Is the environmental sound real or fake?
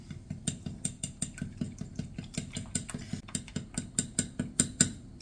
real